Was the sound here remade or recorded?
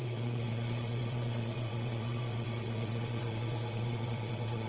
remade